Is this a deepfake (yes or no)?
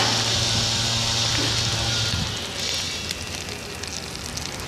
no